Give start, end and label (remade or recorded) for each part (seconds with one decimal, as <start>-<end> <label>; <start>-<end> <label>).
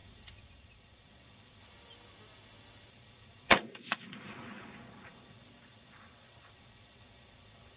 0.0-1.6 remade; 1.6-2.9 recorded; 2.9-7.8 remade